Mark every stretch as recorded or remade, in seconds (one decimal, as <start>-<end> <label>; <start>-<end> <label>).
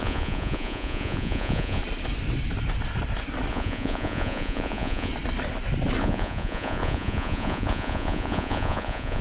0.0-1.8 remade; 1.8-3.5 recorded; 3.5-5.1 remade; 5.1-6.0 recorded; 6.0-9.2 remade